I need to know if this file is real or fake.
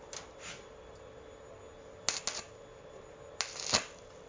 real